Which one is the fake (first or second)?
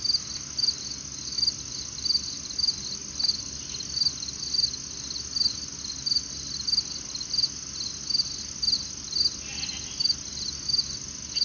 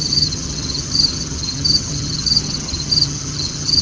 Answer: second